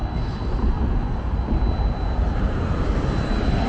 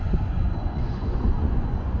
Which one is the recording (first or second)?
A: first